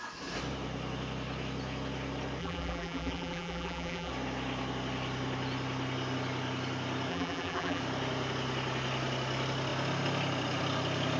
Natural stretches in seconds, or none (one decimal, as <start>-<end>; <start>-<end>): 0.0-2.4; 4.1-7.1; 7.8-11.2

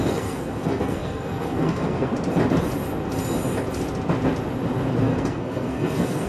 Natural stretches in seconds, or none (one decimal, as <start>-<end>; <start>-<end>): 2.1-5.0

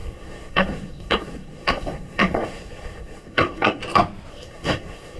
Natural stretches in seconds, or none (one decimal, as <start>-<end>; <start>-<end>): 3.8-4.3